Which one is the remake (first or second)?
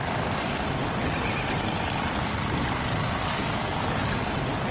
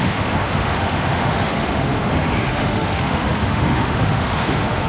second